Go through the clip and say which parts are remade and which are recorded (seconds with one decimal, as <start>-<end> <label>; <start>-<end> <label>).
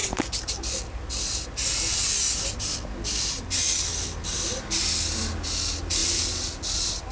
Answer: 0.0-7.1 recorded